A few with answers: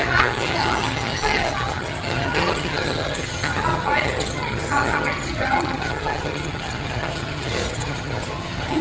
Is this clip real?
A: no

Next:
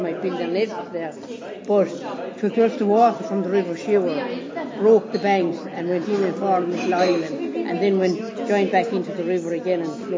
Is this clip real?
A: yes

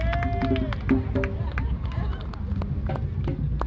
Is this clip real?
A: yes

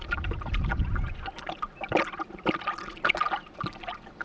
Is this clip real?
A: no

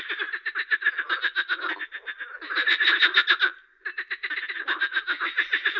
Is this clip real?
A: yes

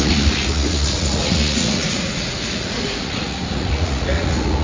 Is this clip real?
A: no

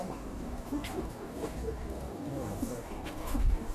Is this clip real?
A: no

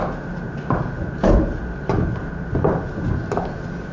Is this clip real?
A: yes